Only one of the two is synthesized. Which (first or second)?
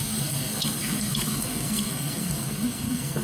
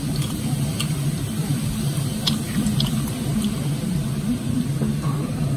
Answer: first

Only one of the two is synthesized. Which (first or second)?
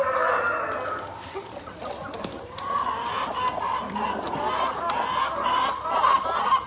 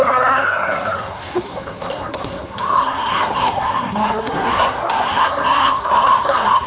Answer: second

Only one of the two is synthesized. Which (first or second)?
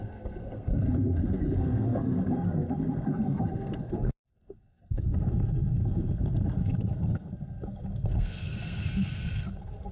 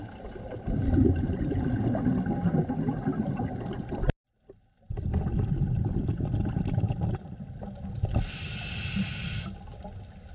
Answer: first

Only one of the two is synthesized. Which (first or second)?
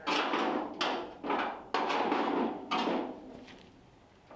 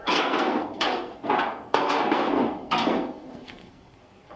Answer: second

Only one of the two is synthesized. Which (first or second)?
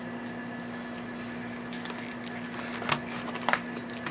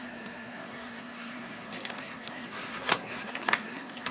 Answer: second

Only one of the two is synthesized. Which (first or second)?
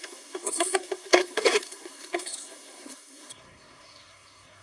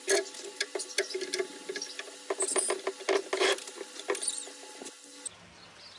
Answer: first